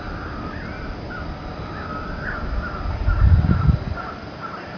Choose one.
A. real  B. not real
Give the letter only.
A